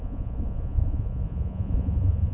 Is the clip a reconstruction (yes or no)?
yes